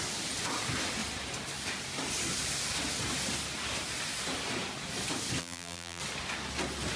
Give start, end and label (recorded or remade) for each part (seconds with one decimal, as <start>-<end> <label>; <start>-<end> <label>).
0.0-5.4 recorded; 5.4-6.0 remade; 6.0-7.0 recorded

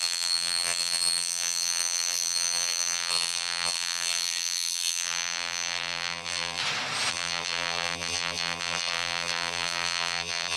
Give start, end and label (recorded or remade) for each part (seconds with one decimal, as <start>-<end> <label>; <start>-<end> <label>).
0.0-6.6 remade; 6.6-7.1 recorded; 7.1-10.6 remade

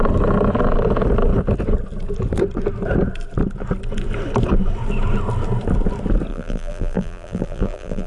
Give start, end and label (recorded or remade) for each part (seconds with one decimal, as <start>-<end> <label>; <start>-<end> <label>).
0.0-6.3 recorded; 6.3-8.1 remade

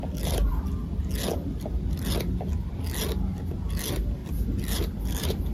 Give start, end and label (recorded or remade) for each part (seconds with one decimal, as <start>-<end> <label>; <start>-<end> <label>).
0.0-0.5 recorded; 0.5-1.0 remade; 1.0-4.2 recorded; 4.2-5.0 remade; 5.0-5.5 recorded

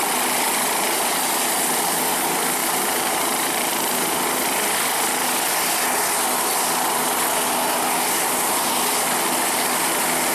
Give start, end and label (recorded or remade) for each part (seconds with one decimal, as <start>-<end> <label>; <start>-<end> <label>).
0.0-2.6 recorded; 2.6-3.7 remade; 3.7-10.3 recorded

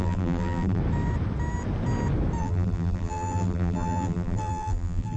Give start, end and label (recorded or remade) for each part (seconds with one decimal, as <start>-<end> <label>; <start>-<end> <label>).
0.0-0.8 remade; 0.8-2.4 recorded; 2.4-5.2 remade

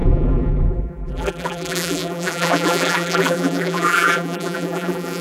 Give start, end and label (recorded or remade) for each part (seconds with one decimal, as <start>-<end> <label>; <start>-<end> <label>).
0.0-5.2 remade